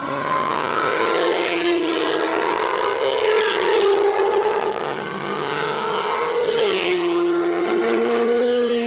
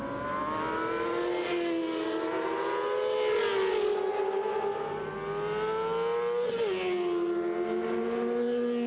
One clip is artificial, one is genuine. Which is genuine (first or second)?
second